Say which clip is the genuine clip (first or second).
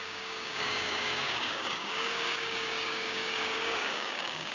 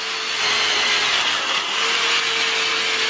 second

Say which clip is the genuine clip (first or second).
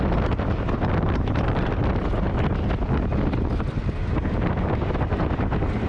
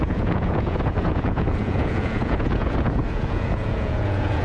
first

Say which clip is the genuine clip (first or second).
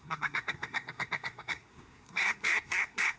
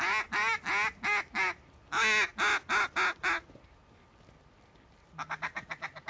second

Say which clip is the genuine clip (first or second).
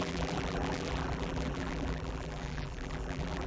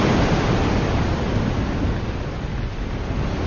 second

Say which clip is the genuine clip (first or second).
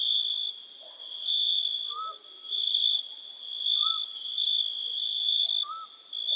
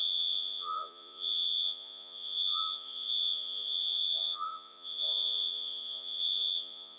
first